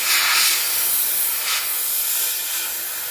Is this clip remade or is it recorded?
recorded